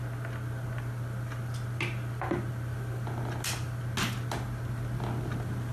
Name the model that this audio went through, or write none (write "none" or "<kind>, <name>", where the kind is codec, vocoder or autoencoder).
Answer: none